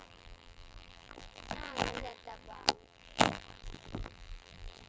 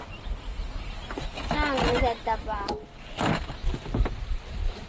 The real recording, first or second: second